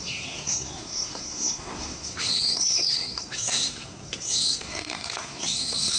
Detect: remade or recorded remade